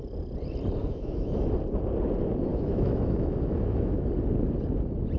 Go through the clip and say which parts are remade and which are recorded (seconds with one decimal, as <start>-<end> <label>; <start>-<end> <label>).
0.0-0.8 recorded; 0.8-1.5 remade; 1.5-2.5 recorded; 2.5-4.1 remade; 4.1-5.2 recorded

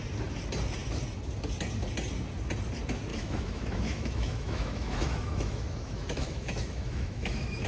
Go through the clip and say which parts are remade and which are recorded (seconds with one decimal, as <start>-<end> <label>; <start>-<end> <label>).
0.0-3.1 recorded; 3.1-7.7 remade

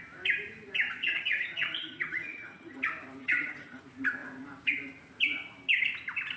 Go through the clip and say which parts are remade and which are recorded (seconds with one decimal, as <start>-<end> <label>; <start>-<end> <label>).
0.0-1.0 recorded; 1.0-2.8 remade; 2.8-3.2 recorded; 3.2-3.8 remade; 3.8-6.4 recorded